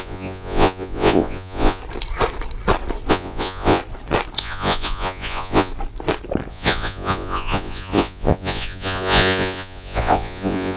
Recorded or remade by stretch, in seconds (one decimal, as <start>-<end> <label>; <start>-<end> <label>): 0.0-1.8 remade; 1.8-3.1 recorded; 3.1-3.8 remade; 3.8-4.4 recorded; 4.4-5.7 remade; 5.7-6.5 recorded; 6.5-10.8 remade